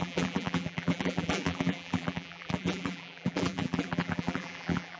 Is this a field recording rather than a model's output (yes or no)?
no